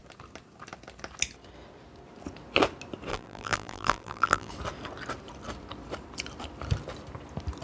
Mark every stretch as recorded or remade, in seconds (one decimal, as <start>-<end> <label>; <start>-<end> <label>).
0.0-3.1 recorded; 3.1-4.5 remade; 4.5-7.6 recorded